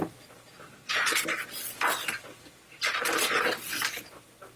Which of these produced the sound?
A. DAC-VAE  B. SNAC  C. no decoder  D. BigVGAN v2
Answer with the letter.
C